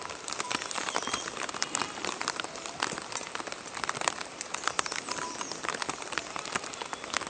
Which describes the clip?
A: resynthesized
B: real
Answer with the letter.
A